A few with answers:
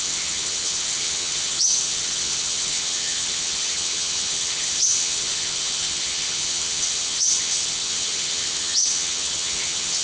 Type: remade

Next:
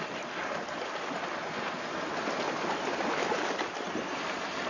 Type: recorded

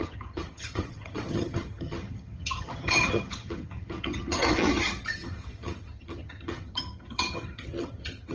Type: remade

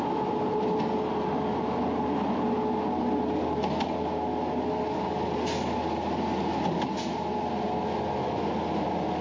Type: recorded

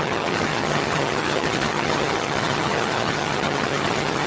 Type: remade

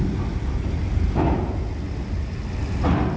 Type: recorded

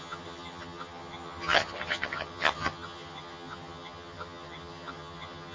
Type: remade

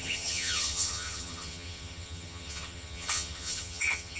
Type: remade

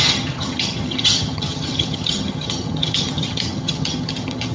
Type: remade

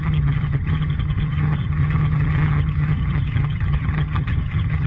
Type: remade